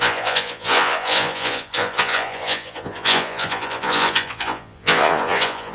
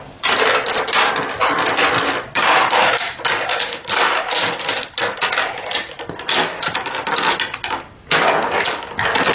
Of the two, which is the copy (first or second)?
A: first